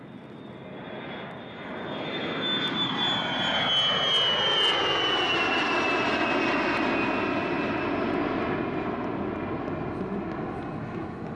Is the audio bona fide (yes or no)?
yes